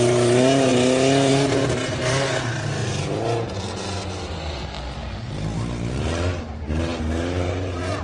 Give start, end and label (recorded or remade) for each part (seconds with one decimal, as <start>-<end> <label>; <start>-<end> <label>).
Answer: 0.0-0.7 remade; 0.7-1.3 recorded; 1.3-2.8 remade; 2.8-6.4 recorded; 6.4-6.9 remade; 6.9-7.5 recorded; 7.5-8.0 remade